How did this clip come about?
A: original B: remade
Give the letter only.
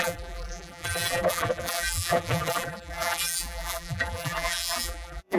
B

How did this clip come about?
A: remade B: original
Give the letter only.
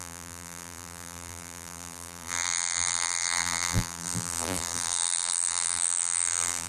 A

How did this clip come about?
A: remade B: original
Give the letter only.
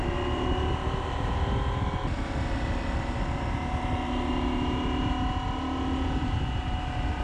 B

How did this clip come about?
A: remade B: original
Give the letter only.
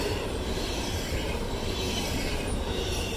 A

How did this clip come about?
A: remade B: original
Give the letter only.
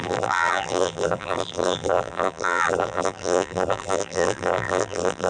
A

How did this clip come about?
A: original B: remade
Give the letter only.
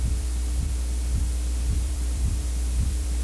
B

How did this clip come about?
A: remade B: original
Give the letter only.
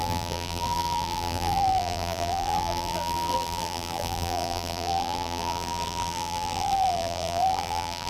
A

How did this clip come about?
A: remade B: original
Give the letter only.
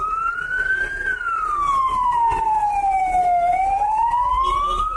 B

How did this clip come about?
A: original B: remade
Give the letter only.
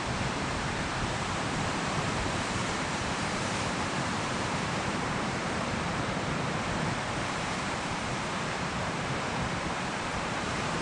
B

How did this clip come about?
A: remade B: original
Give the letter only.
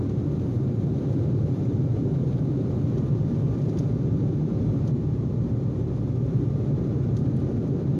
A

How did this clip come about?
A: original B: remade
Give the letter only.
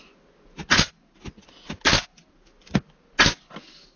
A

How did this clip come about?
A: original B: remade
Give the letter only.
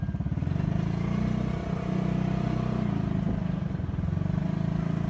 A